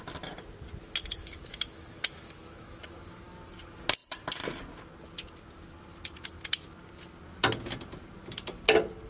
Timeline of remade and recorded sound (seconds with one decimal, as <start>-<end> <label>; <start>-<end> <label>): 0.0-1.2 recorded; 1.2-3.2 remade; 3.2-9.1 recorded